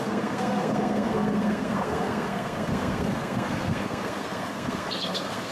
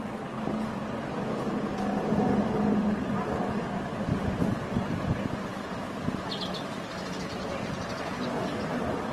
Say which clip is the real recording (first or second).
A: second